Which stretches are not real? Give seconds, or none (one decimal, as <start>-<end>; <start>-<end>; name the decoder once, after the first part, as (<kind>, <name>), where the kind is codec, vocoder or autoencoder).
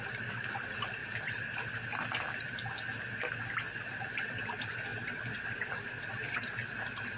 0.0-1.0 (vocoder, BigVGAN v2); 4.1-6.6